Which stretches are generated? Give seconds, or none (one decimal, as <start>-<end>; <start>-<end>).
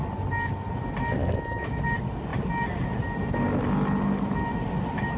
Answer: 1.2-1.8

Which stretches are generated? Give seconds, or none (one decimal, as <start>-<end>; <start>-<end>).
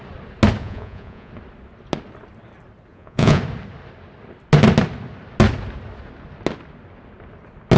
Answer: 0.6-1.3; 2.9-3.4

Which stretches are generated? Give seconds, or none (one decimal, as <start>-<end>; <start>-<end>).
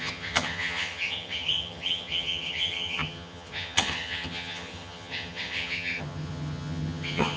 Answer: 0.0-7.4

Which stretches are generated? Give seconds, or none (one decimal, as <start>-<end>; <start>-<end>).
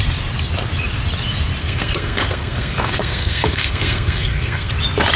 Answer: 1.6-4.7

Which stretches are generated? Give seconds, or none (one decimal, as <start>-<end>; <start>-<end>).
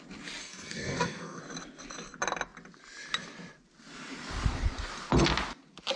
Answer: 0.4-1.4